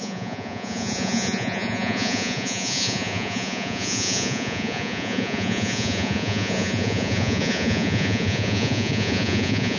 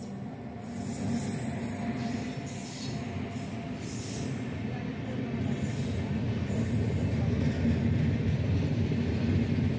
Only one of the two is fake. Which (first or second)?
first